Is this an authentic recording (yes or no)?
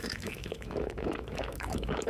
no